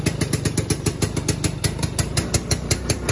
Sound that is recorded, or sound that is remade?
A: recorded